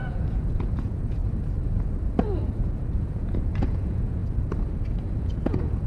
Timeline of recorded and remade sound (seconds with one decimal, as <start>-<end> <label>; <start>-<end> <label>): 0.0-1.2 remade; 1.2-2.6 recorded; 2.6-4.2 remade; 4.2-5.2 recorded; 5.2-5.9 remade